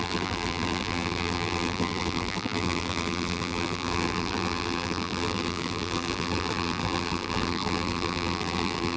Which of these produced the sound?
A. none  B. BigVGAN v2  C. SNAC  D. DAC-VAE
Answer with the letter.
B